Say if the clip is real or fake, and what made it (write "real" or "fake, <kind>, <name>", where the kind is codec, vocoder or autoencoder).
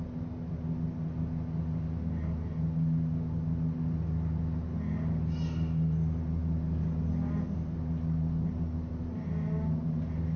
real